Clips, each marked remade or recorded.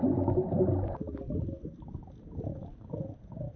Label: recorded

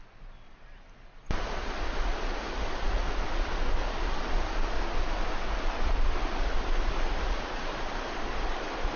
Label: recorded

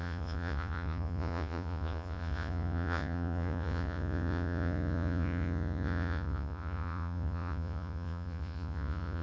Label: remade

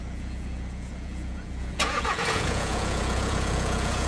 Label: remade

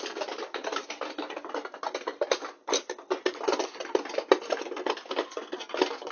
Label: recorded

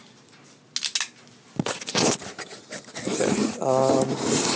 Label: recorded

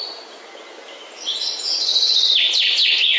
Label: recorded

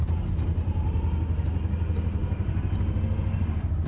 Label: recorded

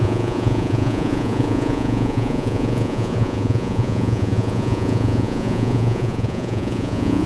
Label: remade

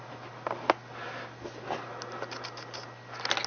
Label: recorded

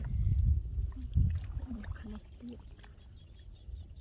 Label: recorded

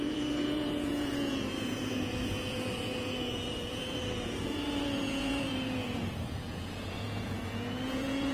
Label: remade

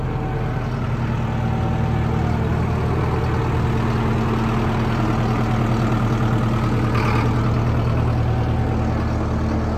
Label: recorded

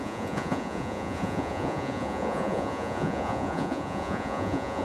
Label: remade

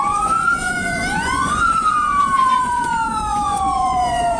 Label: remade